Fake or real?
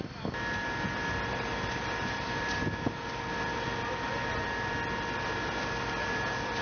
real